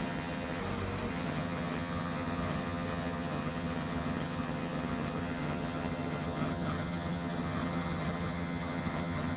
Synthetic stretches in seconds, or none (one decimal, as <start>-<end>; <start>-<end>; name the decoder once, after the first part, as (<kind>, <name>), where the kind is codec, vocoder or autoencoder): 0.0-0.6 (vocoder, HiFi-GAN); 1.1-9.4